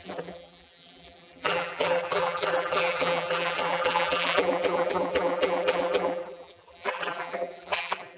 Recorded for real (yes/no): no